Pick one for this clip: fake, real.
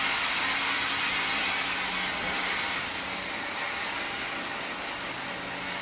real